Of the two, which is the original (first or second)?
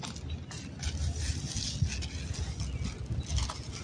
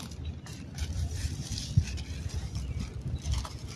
first